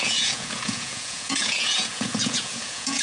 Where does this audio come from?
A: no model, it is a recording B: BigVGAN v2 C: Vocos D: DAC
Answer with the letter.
C